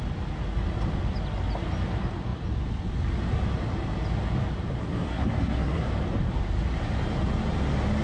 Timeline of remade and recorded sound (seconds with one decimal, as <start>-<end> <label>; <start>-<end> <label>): 0.0-4.8 recorded; 4.8-5.9 remade; 5.9-8.0 recorded